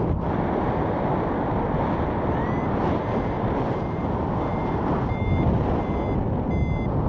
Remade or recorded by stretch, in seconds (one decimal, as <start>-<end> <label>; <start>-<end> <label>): 0.0-7.1 recorded